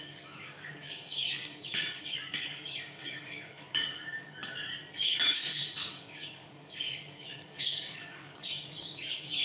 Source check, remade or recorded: remade